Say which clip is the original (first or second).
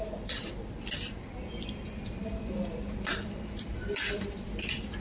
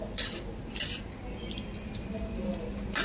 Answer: second